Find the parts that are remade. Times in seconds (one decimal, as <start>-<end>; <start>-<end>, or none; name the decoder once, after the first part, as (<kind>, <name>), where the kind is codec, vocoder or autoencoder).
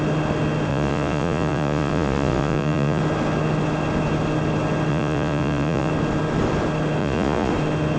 0.7-3.0 (vocoder, Vocos); 4.9-5.9; 7.0-7.5